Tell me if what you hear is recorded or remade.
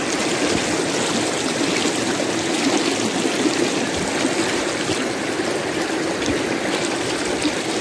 recorded